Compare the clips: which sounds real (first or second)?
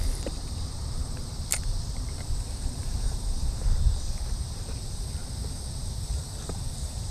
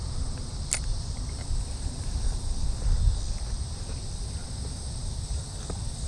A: second